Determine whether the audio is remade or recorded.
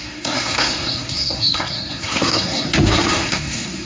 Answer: remade